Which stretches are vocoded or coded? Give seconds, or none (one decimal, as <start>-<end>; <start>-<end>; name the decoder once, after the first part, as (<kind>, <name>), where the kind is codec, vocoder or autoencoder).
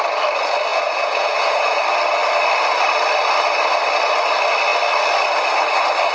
0.7-1.8 (vocoder, Vocos)